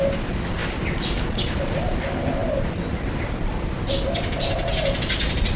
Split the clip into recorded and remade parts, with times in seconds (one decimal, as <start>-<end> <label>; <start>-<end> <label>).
0.0-5.6 recorded